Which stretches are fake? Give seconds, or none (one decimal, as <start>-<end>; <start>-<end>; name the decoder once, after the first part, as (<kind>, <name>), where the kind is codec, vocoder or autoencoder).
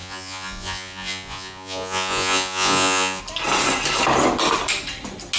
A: 0.0-3.2 (vocoder, Vocos)